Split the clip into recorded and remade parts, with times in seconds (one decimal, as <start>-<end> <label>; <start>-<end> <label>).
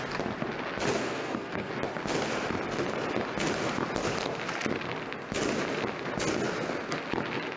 0.0-0.9 recorded; 0.9-1.7 remade; 1.7-7.6 recorded